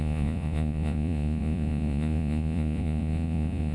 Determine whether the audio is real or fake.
fake